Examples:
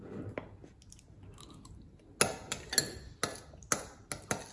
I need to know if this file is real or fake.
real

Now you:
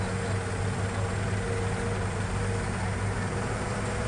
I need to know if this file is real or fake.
real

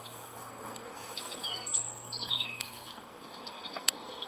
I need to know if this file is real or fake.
fake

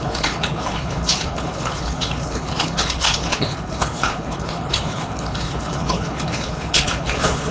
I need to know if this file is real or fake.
fake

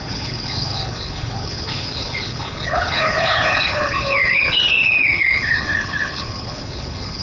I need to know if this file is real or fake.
fake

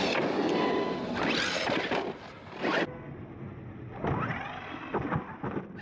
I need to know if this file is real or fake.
real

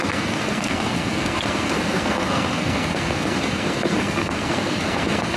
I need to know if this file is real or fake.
fake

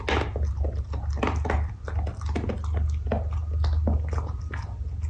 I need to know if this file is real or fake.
real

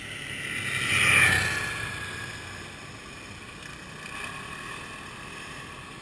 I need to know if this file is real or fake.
real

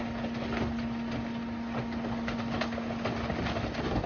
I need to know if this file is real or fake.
real